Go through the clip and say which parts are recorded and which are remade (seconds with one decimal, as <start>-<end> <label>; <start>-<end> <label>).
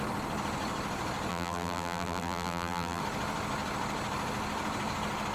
0.0-1.3 recorded; 1.3-3.0 remade; 3.0-5.3 recorded